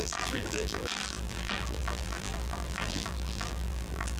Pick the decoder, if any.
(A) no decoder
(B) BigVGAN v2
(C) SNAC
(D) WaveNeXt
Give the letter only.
B